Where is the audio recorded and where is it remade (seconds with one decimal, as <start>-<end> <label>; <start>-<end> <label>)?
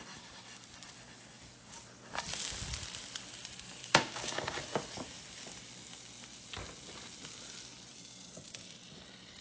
0.0-3.8 recorded; 3.8-4.6 remade; 4.6-9.4 recorded